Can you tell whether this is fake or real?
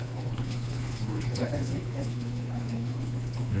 fake